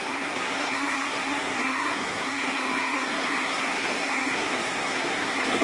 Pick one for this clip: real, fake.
fake